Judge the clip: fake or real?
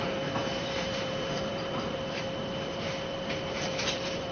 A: fake